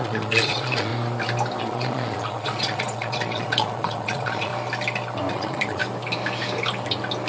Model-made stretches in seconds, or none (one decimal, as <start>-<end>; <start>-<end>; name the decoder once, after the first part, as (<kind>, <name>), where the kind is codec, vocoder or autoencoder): 0.0-0.9 (vocoder, Vocos); 1.6-4.5; 5.3-5.8